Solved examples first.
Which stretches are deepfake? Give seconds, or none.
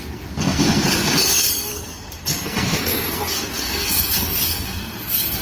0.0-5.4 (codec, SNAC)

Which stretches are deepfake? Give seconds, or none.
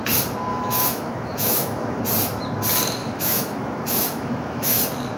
0.5-2.0 (autoencoder, DAC-VAE); 3.0-4.8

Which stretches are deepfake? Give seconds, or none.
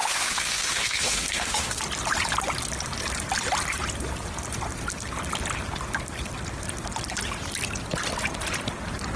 0.0-1.8 (autoencoder, DAC-VAE)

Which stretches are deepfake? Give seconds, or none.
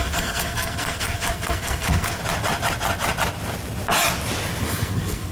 0.0-2.2 (codec, SNAC); 4.6-5.3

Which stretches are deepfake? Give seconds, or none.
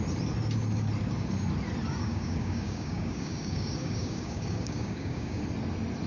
2.0-5.4 (codec, DAC)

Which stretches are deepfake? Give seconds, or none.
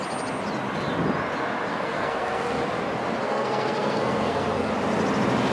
1.7-2.6 (codec, SNAC); 3.2-4.7